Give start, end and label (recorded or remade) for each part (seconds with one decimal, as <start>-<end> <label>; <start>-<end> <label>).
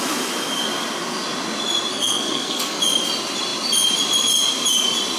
0.0-1.9 recorded; 1.9-2.8 remade; 2.8-5.2 recorded